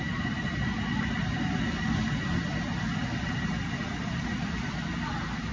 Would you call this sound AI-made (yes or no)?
no